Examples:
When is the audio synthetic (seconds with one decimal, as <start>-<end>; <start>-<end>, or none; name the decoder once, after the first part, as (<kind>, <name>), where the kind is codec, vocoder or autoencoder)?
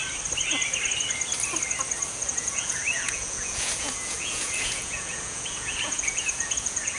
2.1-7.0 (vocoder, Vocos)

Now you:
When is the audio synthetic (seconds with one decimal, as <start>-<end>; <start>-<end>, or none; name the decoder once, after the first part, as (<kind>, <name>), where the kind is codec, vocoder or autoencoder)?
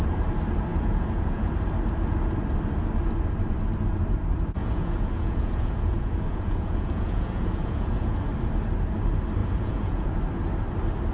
0.7-1.5 (vocoder, Vocos); 4.6-8.3; 9.4-10.2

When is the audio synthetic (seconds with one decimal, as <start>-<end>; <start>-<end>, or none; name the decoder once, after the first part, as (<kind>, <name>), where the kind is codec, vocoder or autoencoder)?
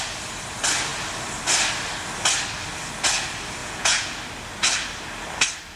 3.6-4.2 (vocoder, Vocos)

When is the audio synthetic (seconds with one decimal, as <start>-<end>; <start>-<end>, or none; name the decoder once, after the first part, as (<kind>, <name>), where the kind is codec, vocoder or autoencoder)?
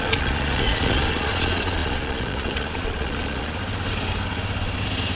0.0-3.6 (vocoder, Vocos)